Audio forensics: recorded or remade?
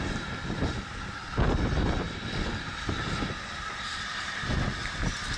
recorded